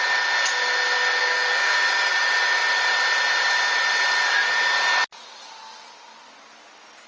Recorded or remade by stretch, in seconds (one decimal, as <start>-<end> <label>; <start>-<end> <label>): 0.0-1.2 recorded; 1.2-2.1 remade; 2.1-7.1 recorded